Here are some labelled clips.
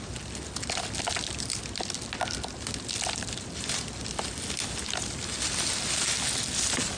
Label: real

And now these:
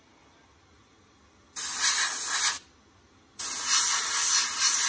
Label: real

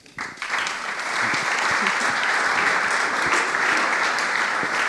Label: real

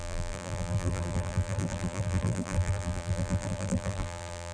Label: fake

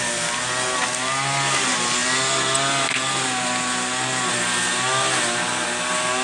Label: real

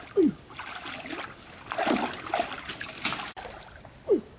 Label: real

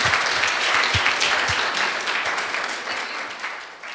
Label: real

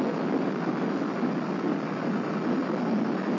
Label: real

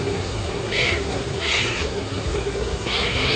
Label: fake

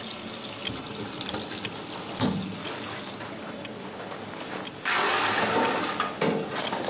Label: real